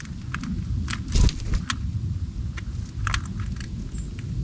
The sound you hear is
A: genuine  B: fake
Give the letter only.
A